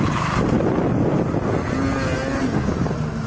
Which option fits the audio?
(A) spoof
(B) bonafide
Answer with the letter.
B